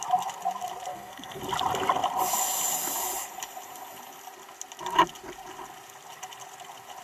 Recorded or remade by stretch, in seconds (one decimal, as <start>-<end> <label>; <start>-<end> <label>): 0.0-0.9 recorded; 0.9-1.4 remade; 1.4-7.0 recorded